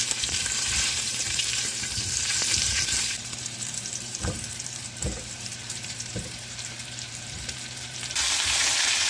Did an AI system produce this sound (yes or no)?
yes